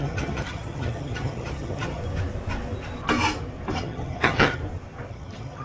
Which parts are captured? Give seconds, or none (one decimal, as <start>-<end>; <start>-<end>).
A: 2.0-3.8; 4.6-5.1